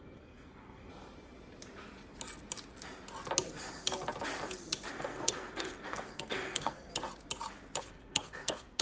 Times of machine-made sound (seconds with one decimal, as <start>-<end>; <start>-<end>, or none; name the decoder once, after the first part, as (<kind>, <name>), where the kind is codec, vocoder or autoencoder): 0.0-0.9 (codec, SNAC); 4.9-6.9; 7.8-8.8